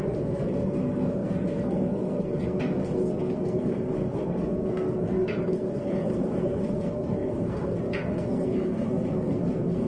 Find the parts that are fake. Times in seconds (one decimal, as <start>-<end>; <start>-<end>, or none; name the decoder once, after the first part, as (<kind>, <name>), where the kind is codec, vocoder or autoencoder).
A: 0.0-9.9 (codec, SNAC)